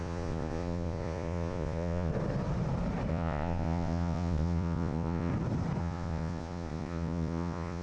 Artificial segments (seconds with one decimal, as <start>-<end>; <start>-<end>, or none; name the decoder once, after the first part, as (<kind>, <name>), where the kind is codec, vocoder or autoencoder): 0.0-2.1 (vocoder, Vocos); 3.1-5.3; 5.8-7.8

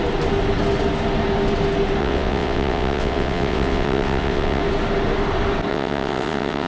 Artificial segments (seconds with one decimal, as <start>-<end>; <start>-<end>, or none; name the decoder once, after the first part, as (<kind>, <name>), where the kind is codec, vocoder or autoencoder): 2.0-4.6 (vocoder, WaveNeXt); 5.7-6.7

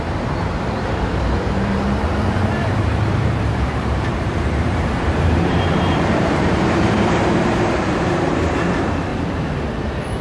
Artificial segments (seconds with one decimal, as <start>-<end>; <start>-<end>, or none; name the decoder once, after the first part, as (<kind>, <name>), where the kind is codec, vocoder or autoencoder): 0.0-9.1 (vocoder, BigVGAN v2)

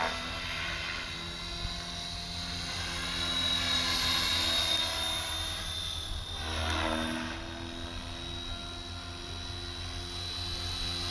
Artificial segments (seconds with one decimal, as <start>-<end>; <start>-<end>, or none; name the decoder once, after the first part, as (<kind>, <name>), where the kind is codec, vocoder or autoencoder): 4.4-5.3 (vocoder, BigVGAN v2)

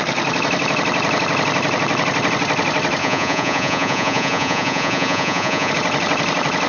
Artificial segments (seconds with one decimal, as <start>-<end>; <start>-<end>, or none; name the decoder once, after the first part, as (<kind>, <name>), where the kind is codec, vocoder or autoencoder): 3.0-5.7 (vocoder, Vocos)

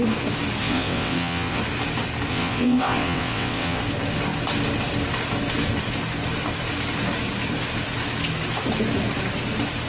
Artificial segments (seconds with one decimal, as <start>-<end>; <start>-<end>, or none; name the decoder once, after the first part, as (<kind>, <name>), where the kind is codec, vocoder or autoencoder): 0.6-1.6 (vocoder, WaveNeXt); 2.3-3.8